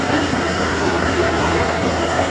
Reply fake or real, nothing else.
fake